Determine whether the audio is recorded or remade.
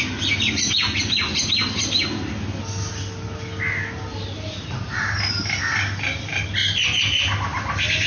recorded